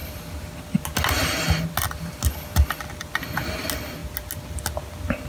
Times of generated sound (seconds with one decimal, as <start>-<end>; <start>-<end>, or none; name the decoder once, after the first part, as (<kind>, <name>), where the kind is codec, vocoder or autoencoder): none